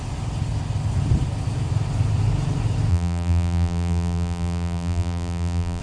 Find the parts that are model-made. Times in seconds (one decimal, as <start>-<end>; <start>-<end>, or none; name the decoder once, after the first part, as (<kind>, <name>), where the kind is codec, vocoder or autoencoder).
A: 2.9-5.8 (vocoder, BigVGAN v2)